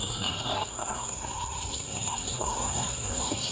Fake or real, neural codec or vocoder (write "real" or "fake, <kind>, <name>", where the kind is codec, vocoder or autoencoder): fake, codec, SNAC